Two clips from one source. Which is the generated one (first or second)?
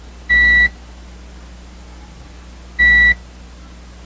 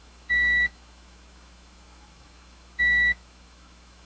second